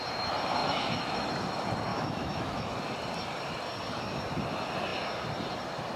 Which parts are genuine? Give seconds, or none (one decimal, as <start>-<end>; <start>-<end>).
0.0-0.6; 1.3-1.9; 2.7-6.0